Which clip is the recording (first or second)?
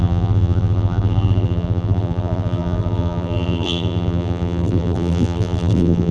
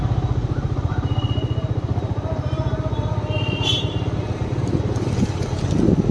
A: second